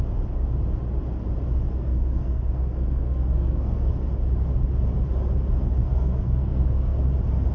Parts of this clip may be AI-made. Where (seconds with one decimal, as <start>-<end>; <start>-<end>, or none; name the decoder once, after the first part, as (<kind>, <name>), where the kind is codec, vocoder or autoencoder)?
1.8-3.9 (codec, SNAC); 5.8-7.0